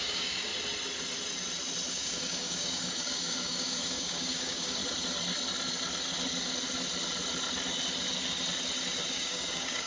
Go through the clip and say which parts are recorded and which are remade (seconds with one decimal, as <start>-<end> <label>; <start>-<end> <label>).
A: 0.0-0.5 remade; 0.5-1.9 recorded; 1.9-4.8 remade; 4.8-9.1 recorded; 9.1-9.9 remade